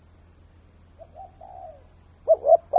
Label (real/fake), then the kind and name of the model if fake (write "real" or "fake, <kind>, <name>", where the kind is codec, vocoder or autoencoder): real